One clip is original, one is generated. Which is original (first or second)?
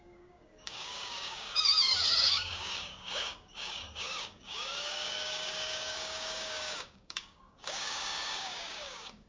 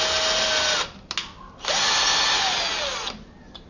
second